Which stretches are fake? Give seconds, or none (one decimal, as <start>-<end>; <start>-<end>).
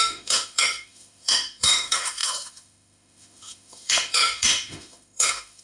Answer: 0.0-5.6